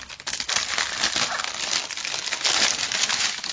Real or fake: real